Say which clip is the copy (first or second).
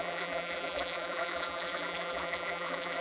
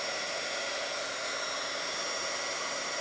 first